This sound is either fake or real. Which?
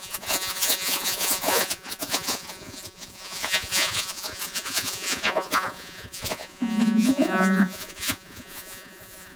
fake